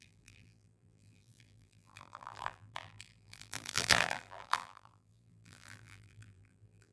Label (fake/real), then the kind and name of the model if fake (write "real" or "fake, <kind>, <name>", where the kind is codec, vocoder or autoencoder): fake, vocoder, BigVGAN v2